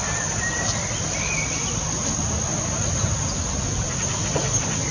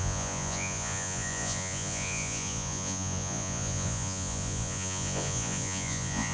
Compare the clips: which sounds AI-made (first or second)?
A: second